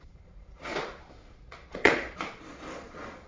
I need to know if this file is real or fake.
fake